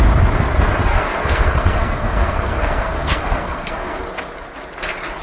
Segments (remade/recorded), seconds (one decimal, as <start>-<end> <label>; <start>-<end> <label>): 0.0-0.9 recorded; 0.9-4.0 remade; 4.0-5.2 recorded